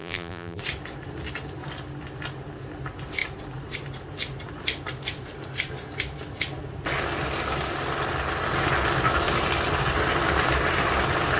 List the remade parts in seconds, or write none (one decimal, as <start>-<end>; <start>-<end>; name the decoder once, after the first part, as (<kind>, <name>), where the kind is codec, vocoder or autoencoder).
0.0-0.6 (vocoder, BigVGAN v2)